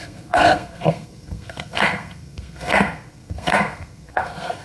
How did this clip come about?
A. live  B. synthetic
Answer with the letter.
B